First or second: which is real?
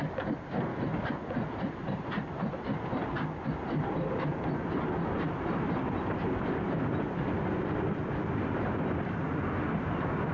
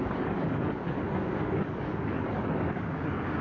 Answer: first